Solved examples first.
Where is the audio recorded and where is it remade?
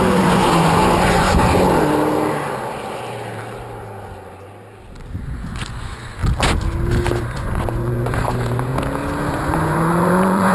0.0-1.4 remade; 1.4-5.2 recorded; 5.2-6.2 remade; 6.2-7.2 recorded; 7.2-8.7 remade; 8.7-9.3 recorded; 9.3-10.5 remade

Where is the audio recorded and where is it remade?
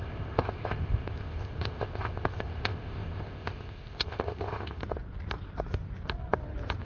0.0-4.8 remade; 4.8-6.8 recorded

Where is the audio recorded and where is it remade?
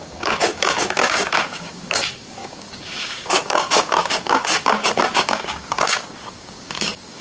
0.0-7.2 remade